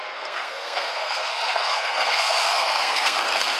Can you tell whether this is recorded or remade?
remade